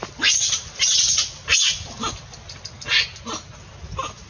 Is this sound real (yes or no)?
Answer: yes